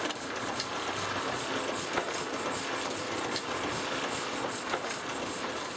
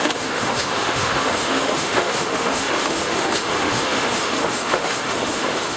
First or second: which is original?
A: first